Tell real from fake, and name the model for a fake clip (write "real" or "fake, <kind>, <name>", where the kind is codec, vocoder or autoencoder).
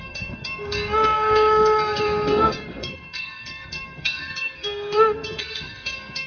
fake, codec, SNAC